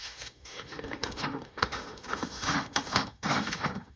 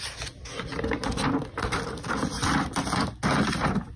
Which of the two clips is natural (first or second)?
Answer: second